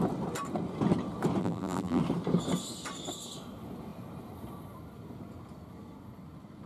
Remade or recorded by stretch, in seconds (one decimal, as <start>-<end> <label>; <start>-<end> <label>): 0.0-1.4 recorded; 1.4-2.0 remade; 2.0-6.7 recorded